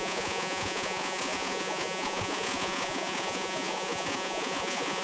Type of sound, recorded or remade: remade